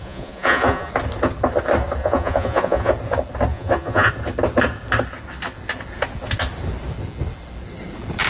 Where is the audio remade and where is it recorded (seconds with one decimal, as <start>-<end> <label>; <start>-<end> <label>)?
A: 0.0-0.9 remade; 0.9-2.0 recorded; 2.0-2.9 remade; 2.9-3.5 recorded; 3.5-4.1 remade; 4.1-8.3 recorded